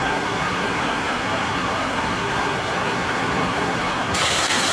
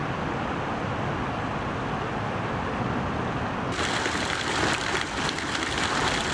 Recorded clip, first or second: second